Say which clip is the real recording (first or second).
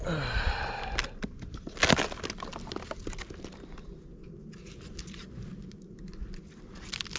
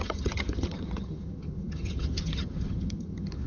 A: first